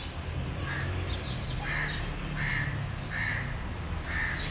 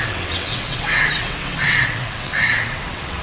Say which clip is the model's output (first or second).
second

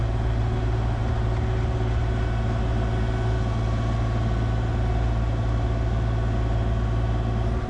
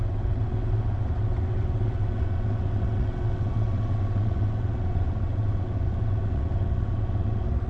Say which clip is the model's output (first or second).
second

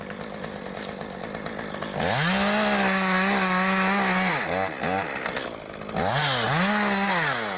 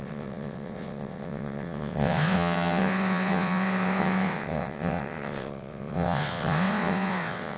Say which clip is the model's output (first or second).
second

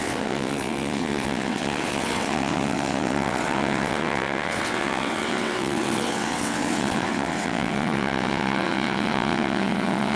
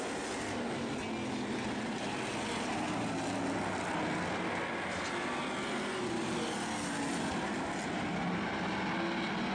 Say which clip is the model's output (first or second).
first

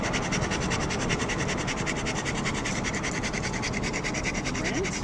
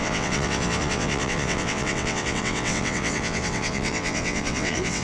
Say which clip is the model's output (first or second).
second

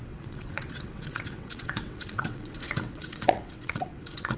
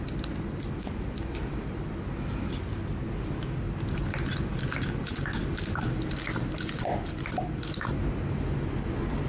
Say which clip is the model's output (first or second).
first